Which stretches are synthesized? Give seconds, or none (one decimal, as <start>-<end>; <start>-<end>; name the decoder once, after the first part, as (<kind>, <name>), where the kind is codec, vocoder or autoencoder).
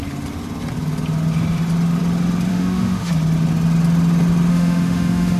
2.5-3.1 (autoencoder, DAC-VAE); 4.5-5.4